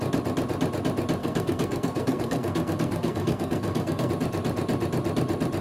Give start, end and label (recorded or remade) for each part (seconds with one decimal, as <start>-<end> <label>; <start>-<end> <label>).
0.0-1.2 recorded; 1.2-4.1 remade; 4.1-5.6 recorded